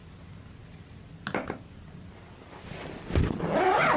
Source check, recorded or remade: recorded